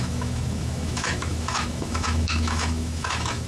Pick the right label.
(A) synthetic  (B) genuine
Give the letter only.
A